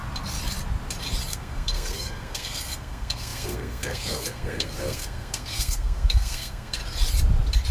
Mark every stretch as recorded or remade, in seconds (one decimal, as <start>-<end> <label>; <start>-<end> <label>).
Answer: 0.0-1.3 recorded; 1.3-6.8 remade; 6.8-7.7 recorded